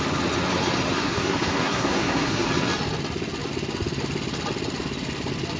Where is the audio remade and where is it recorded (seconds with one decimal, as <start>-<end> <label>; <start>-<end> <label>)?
0.0-1.0 recorded; 1.0-2.5 remade; 2.5-5.6 recorded